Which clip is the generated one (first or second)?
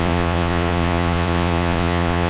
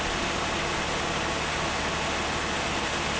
first